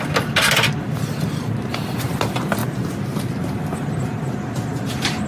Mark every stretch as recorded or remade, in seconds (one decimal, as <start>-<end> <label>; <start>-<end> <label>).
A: 0.0-5.3 recorded